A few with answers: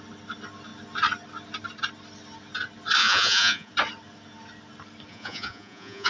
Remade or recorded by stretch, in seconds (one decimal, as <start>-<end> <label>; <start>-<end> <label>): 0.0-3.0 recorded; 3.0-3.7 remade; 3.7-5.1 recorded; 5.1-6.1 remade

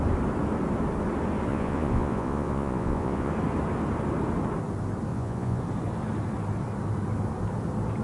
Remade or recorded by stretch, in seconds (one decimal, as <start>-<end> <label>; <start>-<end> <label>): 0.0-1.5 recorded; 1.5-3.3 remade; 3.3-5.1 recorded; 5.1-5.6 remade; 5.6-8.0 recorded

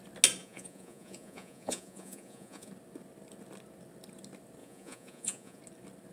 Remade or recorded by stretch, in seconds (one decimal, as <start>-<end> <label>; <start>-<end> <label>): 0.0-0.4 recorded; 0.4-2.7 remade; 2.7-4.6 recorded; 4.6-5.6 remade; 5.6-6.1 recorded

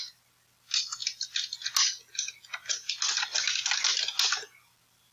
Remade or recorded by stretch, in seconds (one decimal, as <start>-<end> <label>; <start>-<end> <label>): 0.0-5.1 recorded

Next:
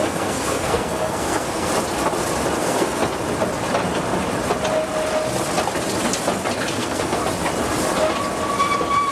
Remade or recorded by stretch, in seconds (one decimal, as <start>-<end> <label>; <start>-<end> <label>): 0.0-1.7 remade; 1.7-2.6 recorded; 2.6-3.0 remade; 3.0-6.7 recorded; 6.7-7.2 remade; 7.2-9.1 recorded

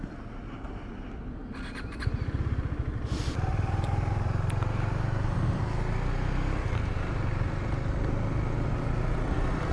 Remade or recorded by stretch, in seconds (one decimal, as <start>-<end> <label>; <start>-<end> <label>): 0.0-3.5 recorded; 3.5-5.6 remade; 5.6-9.7 recorded

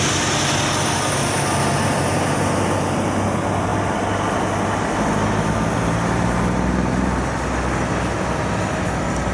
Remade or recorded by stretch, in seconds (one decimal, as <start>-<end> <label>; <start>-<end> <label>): 0.0-9.3 recorded

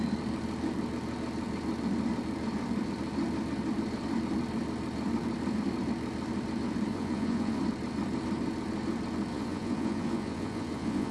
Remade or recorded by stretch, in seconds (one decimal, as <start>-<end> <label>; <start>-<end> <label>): 0.0-6.9 recorded; 6.9-7.6 remade; 7.6-9.3 recorded; 9.3-11.1 remade